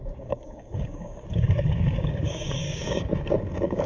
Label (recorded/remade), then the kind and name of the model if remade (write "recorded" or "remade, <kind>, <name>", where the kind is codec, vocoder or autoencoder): remade, codec, DAC